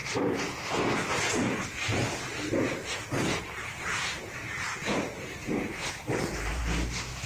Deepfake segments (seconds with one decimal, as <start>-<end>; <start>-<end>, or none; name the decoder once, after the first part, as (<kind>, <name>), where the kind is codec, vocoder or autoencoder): 2.3-6.6 (vocoder, BigVGAN v2)

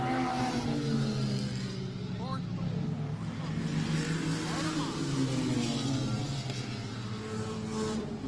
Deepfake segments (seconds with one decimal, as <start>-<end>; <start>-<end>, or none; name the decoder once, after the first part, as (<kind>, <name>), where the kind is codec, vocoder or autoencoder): none

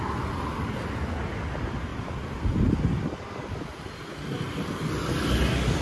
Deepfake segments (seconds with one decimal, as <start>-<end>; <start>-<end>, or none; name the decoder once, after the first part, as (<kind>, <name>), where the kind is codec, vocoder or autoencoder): 1.9-4.9 (vocoder, BigVGAN v2)

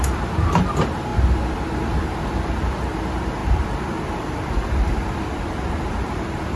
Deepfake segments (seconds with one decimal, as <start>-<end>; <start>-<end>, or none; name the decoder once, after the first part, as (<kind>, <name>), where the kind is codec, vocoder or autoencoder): 0.0-1.1 (vocoder, BigVGAN v2); 2.3-6.6

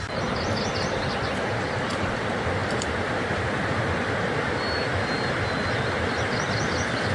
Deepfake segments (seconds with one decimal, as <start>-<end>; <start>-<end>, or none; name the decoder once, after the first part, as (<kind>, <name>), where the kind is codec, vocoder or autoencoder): 2.6-3.5 (vocoder, BigVGAN v2)

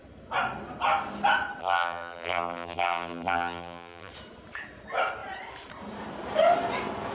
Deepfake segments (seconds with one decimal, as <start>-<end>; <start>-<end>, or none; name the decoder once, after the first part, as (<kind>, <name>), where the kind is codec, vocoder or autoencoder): 1.6-4.1 (vocoder, BigVGAN v2)

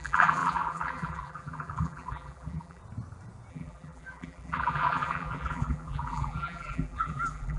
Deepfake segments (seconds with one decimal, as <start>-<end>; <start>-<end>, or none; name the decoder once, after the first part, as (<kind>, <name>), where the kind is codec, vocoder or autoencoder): 0.0-2.8 (vocoder, BigVGAN v2); 3.5-7.6

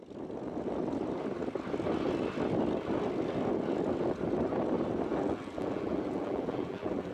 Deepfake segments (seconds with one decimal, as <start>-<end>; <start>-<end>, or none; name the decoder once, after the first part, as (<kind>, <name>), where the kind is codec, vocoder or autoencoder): 5.1-7.1 (vocoder, BigVGAN v2)